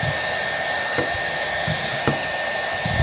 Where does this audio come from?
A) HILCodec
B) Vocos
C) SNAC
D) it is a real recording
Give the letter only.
D